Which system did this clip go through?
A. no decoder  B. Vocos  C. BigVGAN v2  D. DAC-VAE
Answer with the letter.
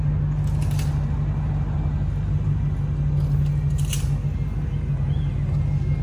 A